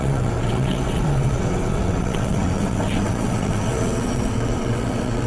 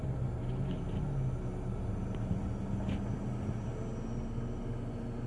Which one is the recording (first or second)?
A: second